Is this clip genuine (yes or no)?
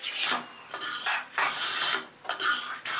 yes